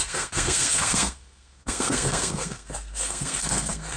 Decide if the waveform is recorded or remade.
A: remade